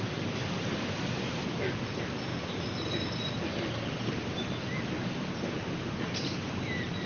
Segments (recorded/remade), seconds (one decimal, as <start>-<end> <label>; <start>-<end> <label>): 0.0-7.1 recorded